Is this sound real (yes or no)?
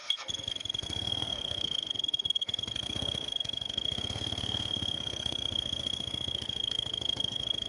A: no